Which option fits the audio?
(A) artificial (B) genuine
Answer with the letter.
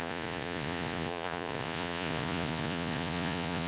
A